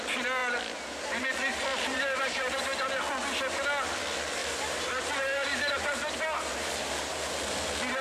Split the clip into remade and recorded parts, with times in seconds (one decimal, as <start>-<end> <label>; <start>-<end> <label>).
0.0-1.7 recorded; 1.7-2.8 remade; 2.8-4.4 recorded; 4.4-7.3 remade; 7.3-8.0 recorded